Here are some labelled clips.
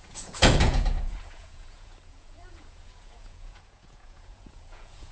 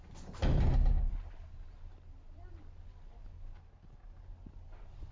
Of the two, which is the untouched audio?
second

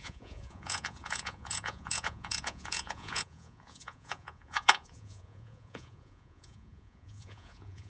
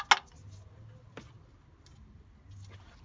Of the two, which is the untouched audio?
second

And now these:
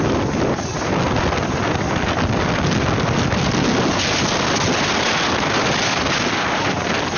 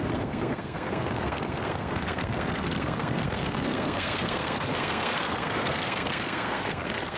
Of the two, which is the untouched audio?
first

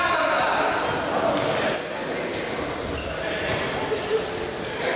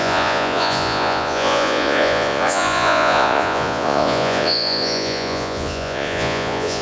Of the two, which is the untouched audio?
first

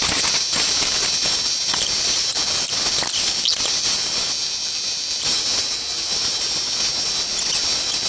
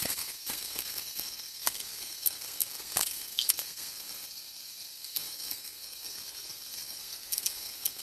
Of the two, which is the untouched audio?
first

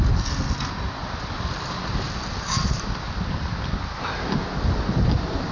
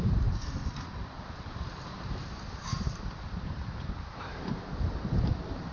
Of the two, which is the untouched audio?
first